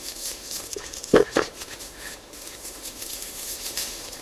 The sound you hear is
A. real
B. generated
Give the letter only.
B